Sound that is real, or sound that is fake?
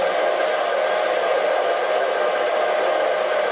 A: real